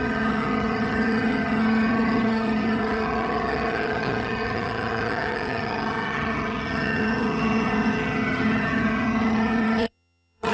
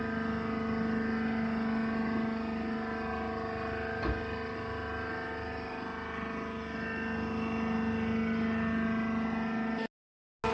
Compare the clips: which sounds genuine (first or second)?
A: second